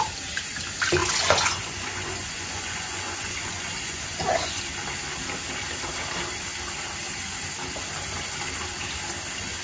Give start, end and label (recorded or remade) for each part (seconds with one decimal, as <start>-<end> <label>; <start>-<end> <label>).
0.0-1.0 recorded; 1.0-4.6 remade; 4.6-9.6 recorded